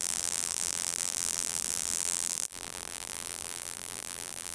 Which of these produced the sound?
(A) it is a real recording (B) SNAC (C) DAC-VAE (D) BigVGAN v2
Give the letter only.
D